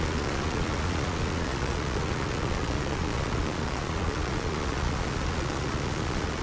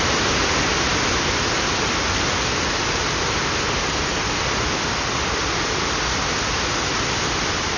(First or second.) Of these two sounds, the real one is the second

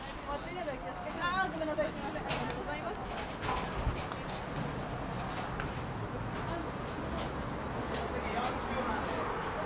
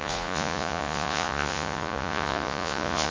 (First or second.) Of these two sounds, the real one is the first